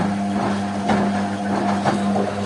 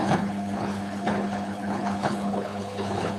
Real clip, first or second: first